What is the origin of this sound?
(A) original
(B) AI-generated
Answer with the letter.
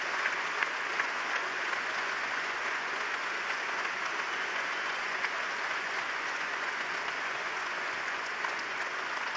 B